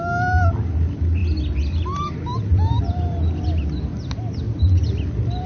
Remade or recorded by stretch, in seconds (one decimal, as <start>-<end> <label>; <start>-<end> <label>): 0.0-5.5 recorded